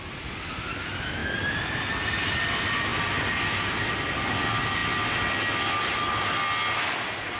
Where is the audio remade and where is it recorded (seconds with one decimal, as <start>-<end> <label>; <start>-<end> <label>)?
0.0-7.4 recorded

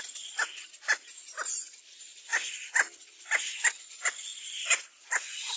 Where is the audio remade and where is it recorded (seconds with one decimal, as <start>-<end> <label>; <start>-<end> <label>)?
0.0-2.1 recorded; 2.1-2.7 remade; 2.7-5.6 recorded

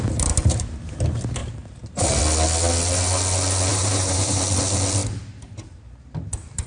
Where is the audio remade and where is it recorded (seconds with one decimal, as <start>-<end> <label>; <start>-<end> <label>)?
0.0-1.4 recorded; 1.4-2.2 remade; 2.2-3.7 recorded; 3.7-4.4 remade; 4.4-6.7 recorded

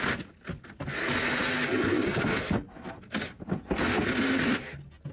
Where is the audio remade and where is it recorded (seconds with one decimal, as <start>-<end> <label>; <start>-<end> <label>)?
0.0-5.1 recorded

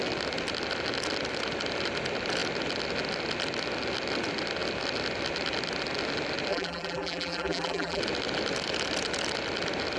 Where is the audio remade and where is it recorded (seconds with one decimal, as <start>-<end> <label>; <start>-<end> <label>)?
0.0-6.5 recorded; 6.5-8.0 remade; 8.0-10.0 recorded

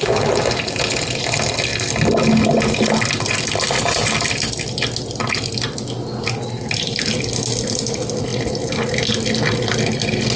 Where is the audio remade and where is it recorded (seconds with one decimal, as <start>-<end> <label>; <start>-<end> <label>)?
0.0-10.4 recorded